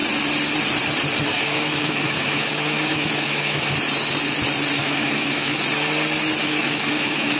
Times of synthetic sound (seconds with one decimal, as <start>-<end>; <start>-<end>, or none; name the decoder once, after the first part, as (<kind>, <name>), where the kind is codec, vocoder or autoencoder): 1.3-3.7 (autoencoder, DAC-VAE); 4.8-5.6; 6.4-7.4